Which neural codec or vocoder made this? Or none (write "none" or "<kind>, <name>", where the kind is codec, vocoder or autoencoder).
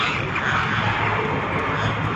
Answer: none